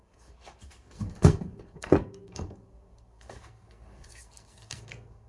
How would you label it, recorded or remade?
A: remade